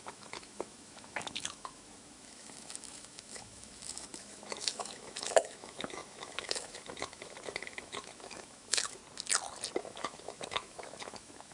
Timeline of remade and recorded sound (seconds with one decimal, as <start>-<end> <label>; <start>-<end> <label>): 0.0-9.0 remade; 9.0-9.8 recorded; 9.8-11.5 remade